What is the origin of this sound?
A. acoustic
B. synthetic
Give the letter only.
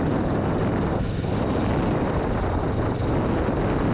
A